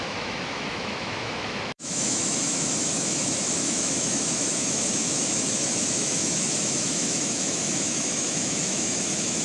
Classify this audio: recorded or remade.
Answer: remade